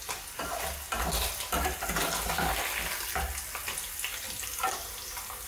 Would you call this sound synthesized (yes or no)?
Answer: no